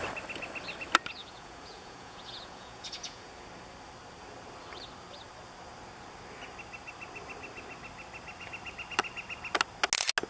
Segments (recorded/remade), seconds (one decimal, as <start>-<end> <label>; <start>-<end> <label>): 0.0-1.2 recorded; 1.2-3.3 remade; 3.3-10.3 recorded